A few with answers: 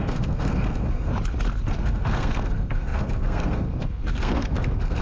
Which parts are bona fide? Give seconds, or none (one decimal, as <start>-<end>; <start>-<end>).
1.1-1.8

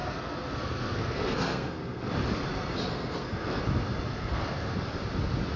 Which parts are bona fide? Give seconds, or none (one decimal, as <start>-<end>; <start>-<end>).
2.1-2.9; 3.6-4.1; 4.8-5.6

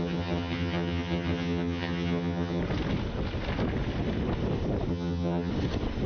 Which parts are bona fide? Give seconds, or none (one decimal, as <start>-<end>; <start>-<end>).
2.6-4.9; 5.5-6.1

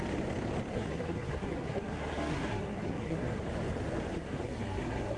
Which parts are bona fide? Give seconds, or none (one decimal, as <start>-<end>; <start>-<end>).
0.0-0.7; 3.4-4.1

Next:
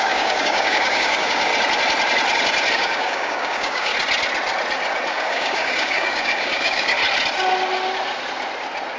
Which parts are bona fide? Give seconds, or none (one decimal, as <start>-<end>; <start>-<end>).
1.5-2.7; 3.9-5.1; 7.0-9.0